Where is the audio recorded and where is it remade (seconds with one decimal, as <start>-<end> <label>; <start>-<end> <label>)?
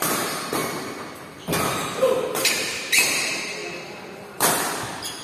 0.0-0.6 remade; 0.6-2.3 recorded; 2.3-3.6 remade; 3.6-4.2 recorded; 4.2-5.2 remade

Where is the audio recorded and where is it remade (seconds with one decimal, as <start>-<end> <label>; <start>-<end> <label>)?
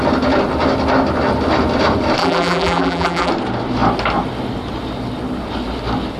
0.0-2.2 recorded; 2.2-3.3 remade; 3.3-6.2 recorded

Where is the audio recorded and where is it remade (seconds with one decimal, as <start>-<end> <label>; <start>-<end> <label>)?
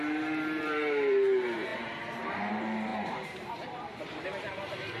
0.0-5.0 remade